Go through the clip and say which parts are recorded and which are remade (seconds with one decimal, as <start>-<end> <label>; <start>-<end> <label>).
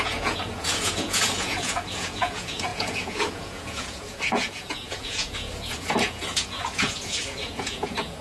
0.0-8.2 remade